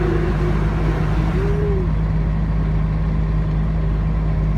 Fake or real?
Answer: real